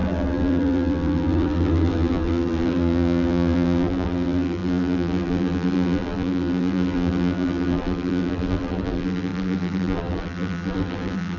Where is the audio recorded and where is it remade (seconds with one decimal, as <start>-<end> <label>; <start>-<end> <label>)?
0.0-11.4 remade